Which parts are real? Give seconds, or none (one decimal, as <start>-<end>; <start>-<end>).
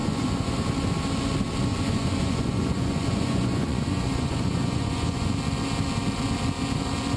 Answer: 0.6-1.7; 5.3-7.2